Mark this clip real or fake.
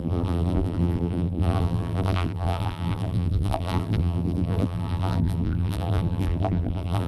fake